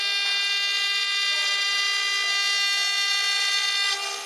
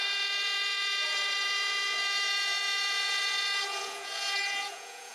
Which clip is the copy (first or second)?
second